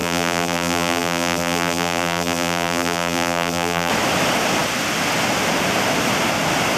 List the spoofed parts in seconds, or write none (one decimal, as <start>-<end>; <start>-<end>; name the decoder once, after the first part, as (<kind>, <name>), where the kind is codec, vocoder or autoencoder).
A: 0.0-3.9 (vocoder, BigVGAN v2)